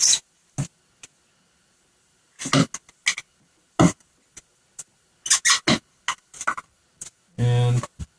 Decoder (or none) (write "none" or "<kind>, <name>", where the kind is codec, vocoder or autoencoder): none